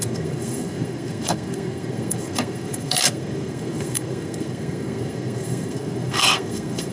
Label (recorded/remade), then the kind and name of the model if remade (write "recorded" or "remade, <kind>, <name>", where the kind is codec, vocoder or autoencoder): remade, codec, SNAC